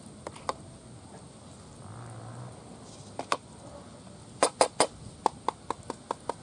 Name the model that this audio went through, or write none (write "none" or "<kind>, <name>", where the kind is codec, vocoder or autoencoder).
none